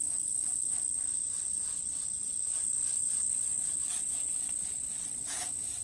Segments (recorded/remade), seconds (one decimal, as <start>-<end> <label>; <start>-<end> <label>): 0.0-5.8 remade